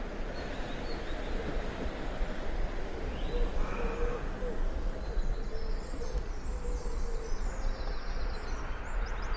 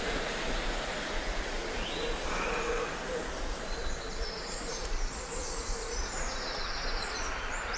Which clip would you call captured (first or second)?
first